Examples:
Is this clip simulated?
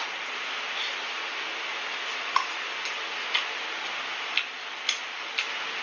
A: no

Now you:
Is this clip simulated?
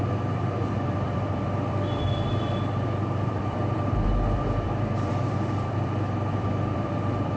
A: yes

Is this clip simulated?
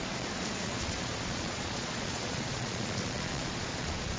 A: yes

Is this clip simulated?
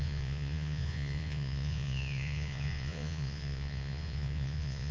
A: yes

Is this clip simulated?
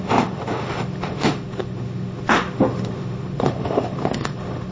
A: yes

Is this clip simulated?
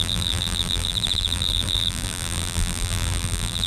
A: yes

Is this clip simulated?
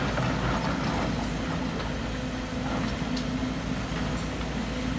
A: no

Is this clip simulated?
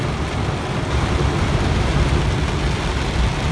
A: no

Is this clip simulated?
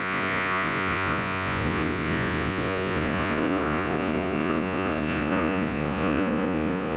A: yes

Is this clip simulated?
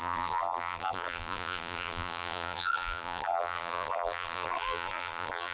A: yes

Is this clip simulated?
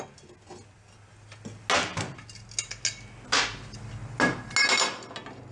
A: no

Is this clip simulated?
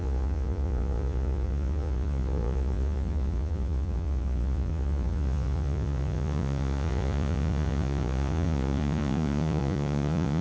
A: yes